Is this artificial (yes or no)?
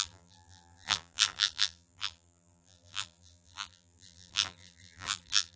yes